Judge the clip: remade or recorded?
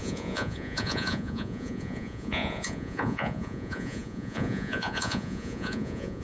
remade